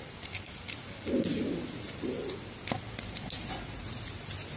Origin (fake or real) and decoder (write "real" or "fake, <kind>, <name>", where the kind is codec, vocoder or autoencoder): real